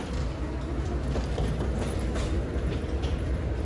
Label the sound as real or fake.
fake